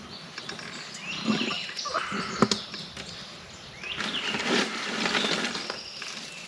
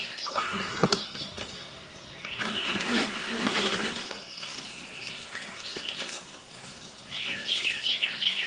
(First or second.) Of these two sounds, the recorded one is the first